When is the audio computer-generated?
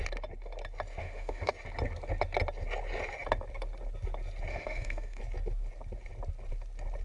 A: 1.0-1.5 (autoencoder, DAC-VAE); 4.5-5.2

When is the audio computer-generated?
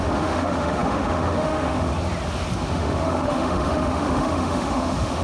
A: 0.0-1.9 (autoencoder, DAC-VAE); 2.7-5.2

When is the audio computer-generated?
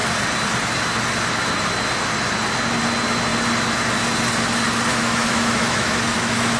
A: 4.9-6.6 (autoencoder, DAC-VAE)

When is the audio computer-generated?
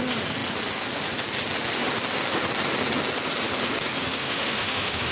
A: 4.2-5.1 (autoencoder, DAC-VAE)